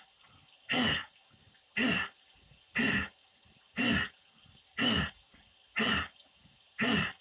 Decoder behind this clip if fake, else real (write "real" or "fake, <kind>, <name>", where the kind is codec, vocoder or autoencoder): real